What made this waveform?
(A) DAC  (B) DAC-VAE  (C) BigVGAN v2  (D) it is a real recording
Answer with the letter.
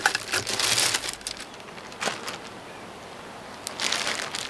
D